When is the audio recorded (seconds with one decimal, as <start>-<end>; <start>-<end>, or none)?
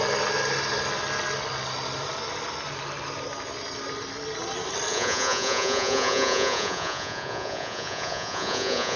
0.0-4.9